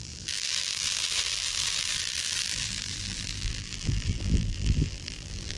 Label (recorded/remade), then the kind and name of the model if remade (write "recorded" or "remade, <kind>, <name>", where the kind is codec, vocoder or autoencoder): remade, vocoder, BigVGAN v2